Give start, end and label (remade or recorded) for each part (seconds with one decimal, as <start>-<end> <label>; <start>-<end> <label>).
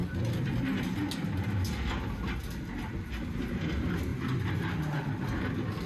0.0-5.9 recorded